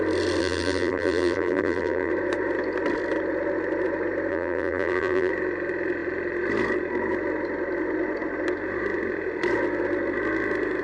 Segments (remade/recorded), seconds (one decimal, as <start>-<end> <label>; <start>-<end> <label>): 0.0-0.4 recorded; 0.4-2.1 remade; 2.1-4.3 recorded; 4.3-5.3 remade; 5.3-10.8 recorded